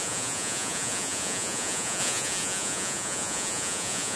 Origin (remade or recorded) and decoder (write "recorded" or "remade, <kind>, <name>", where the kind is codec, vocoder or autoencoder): remade, vocoder, Vocos